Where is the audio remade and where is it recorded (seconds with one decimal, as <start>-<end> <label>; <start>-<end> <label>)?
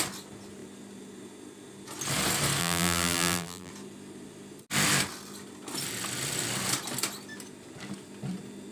0.0-2.6 recorded; 2.6-3.7 remade; 3.7-8.7 recorded